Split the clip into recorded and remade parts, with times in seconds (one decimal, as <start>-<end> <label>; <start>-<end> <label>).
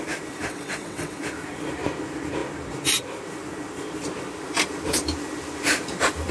0.0-0.5 recorded; 0.5-1.2 remade; 1.2-6.3 recorded